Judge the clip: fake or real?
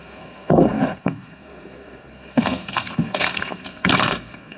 fake